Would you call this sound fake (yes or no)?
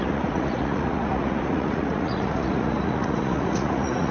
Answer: yes